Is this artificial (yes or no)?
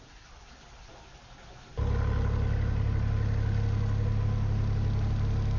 no